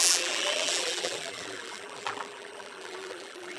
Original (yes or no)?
no